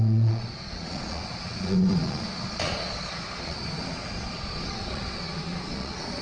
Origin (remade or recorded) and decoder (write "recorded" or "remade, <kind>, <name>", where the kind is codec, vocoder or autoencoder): remade, vocoder, Vocos